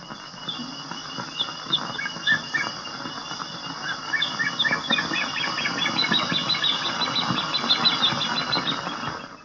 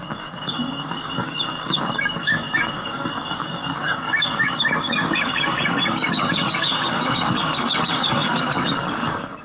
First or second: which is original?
first